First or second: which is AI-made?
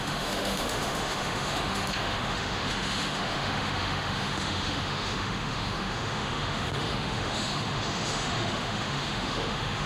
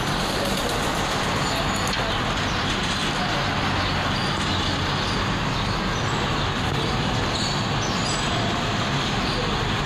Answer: first